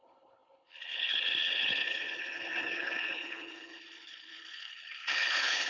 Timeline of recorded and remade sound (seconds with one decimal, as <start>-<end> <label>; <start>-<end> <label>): 0.0-5.7 remade

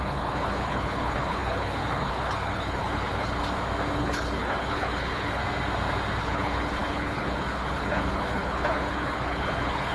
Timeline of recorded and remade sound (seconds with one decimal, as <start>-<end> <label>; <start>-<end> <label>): 0.0-3.4 remade; 3.4-4.0 recorded; 4.0-5.4 remade; 5.4-6.2 recorded; 6.2-9.9 remade

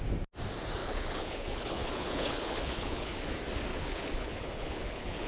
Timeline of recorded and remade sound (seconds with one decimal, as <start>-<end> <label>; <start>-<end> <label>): 0.0-0.8 recorded; 0.8-3.2 remade; 3.2-3.7 recorded; 3.7-5.3 remade

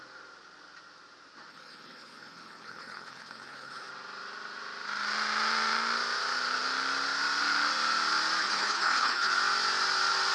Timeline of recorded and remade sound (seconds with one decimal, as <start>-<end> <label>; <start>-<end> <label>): 0.0-1.5 recorded; 1.5-3.9 remade; 3.9-8.4 recorded; 8.4-9.3 remade; 9.3-10.3 recorded